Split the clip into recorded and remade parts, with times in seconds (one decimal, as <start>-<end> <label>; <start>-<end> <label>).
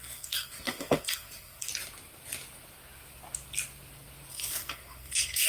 0.0-1.7 remade; 1.7-4.3 recorded; 4.3-5.5 remade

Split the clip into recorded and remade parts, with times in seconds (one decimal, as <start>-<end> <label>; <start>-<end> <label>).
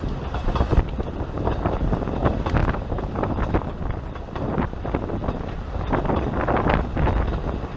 0.0-7.8 recorded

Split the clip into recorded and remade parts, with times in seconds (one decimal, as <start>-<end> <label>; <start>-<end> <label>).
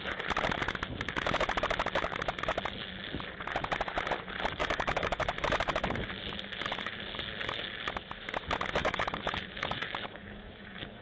0.0-4.6 recorded; 4.6-5.2 remade; 5.2-8.8 recorded; 8.8-11.0 remade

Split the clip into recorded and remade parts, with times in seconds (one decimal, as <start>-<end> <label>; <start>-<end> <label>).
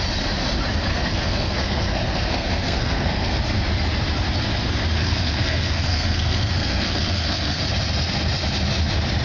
0.0-0.9 recorded; 0.9-3.4 remade; 3.4-5.0 recorded; 5.0-7.6 remade; 7.6-9.2 recorded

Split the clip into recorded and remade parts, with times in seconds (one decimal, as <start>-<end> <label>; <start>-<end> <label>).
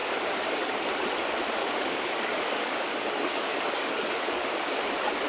0.0-0.9 remade; 0.9-1.6 recorded; 1.6-4.8 remade; 4.8-5.3 recorded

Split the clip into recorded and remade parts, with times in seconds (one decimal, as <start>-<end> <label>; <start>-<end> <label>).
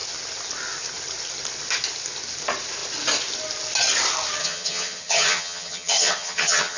0.0-4.4 recorded; 4.4-6.8 remade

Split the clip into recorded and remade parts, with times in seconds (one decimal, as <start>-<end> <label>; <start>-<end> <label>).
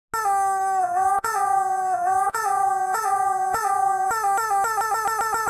0.0-0.8 recorded; 0.8-4.1 remade; 4.1-5.5 recorded